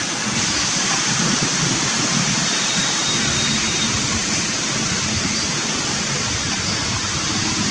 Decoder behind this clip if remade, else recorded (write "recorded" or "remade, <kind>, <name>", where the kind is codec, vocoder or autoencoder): remade, vocoder, BigVGAN v2